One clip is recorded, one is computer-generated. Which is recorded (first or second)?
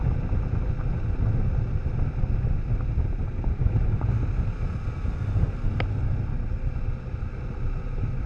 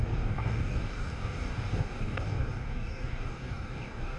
first